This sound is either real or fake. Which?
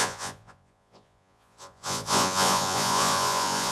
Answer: fake